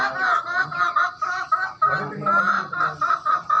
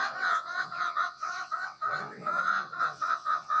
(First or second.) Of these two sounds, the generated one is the second